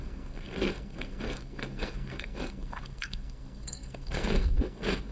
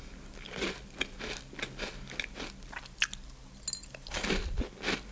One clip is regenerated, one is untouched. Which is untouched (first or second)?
second